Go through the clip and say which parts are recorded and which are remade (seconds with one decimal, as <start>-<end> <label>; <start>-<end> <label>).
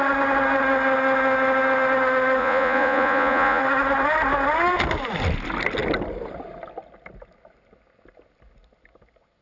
0.0-2.4 recorded; 2.4-3.6 remade; 3.6-9.4 recorded